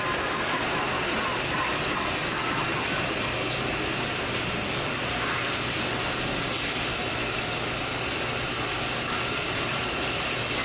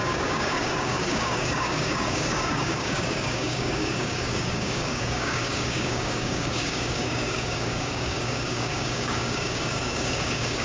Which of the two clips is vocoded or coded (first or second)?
second